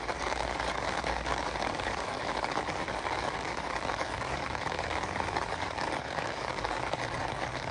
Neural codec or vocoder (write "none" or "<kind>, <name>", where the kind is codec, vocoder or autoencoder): codec, DAC